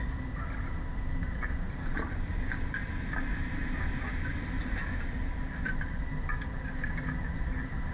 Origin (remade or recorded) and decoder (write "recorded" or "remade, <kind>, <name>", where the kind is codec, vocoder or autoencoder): recorded